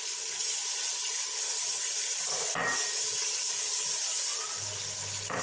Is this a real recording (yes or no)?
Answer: yes